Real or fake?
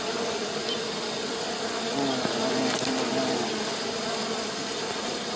real